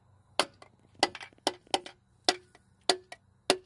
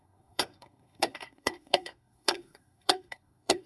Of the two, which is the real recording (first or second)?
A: first